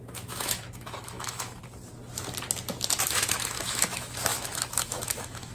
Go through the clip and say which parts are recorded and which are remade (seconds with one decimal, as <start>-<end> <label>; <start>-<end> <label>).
0.0-1.6 remade; 1.6-3.1 recorded; 3.1-5.5 remade